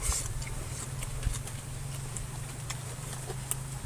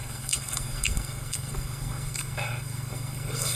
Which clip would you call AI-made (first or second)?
second